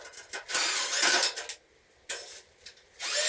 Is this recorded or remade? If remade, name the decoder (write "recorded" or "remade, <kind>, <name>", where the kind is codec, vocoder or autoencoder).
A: recorded